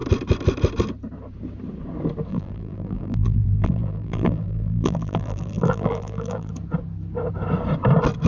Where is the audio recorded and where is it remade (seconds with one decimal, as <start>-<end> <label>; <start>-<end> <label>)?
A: 0.0-2.3 recorded; 2.3-6.5 remade; 6.5-8.3 recorded